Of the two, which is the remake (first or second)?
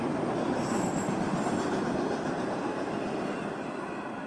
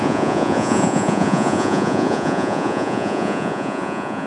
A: second